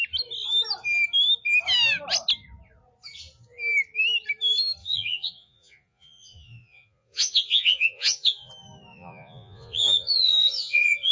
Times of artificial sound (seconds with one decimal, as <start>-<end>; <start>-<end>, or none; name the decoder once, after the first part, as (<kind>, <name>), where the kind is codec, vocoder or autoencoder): 4.8-8.5 (vocoder, Vocos); 8.9-11.1